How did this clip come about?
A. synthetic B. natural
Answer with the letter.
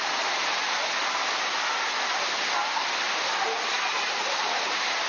B